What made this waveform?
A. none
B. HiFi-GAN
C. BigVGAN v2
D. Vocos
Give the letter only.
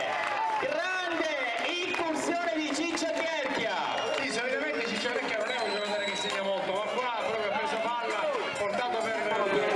A